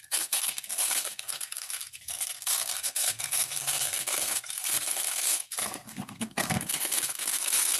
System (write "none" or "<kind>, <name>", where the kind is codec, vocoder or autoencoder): codec, SNAC